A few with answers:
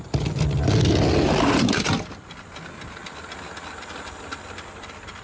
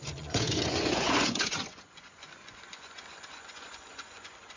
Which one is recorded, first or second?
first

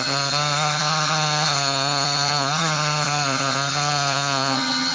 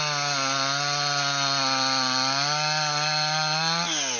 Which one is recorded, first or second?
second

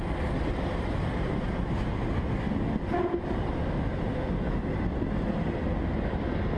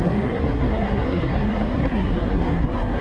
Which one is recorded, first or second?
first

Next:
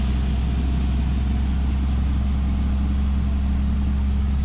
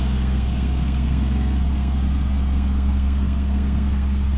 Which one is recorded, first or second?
first